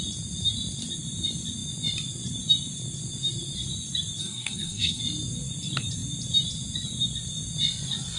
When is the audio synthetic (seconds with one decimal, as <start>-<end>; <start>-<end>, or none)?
4.2-5.0